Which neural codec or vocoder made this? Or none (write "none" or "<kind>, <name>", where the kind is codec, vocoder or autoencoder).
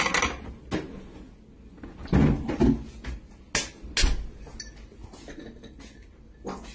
none